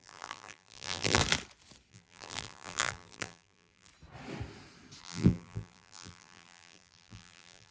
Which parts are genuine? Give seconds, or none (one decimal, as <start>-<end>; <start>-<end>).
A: 1.2-1.9; 3.9-5.0